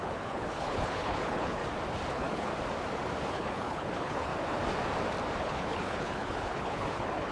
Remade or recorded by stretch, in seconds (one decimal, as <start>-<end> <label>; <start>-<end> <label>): 0.0-1.6 remade; 1.6-2.1 recorded; 2.1-2.5 remade; 2.5-3.3 recorded; 3.3-4.3 remade; 4.3-5.4 recorded; 5.4-7.3 remade